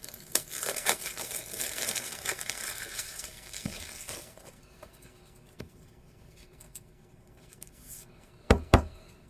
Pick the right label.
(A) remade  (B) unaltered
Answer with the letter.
A